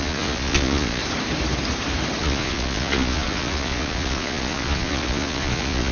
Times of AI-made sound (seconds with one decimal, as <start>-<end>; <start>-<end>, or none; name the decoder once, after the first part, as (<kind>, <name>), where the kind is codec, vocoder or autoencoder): 0.0-1.0 (vocoder, Vocos); 2.2-5.9